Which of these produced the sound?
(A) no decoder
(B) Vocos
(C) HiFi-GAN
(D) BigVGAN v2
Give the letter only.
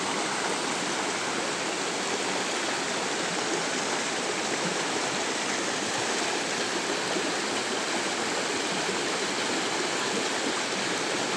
A